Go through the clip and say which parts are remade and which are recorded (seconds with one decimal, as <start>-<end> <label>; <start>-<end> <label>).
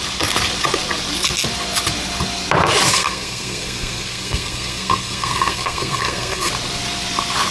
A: 0.0-2.9 recorded; 2.9-6.5 remade; 6.5-7.5 recorded